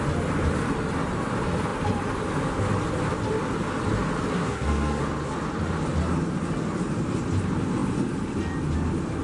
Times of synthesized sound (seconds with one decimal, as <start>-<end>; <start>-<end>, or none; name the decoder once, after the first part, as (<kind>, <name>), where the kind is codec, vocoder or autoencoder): 4.3-5.0 (codec, SNAC)